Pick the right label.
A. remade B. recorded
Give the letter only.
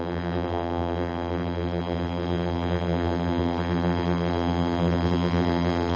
A